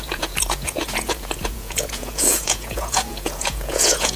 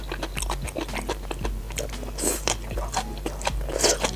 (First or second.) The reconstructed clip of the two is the first